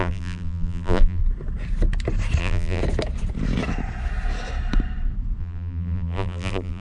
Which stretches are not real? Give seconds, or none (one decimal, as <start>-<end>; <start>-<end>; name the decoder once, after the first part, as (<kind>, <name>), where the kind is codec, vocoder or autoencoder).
0.0-1.2 (vocoder, BigVGAN v2); 2.4-2.8; 5.4-6.8